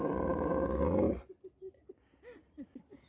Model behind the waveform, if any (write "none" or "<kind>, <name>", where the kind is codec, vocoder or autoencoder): none